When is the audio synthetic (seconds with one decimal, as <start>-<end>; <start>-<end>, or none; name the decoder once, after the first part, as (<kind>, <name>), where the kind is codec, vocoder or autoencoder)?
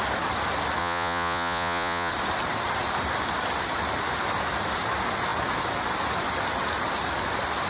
0.8-2.1 (vocoder, Vocos)